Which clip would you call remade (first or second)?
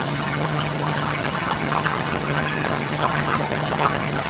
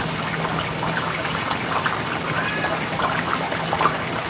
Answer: first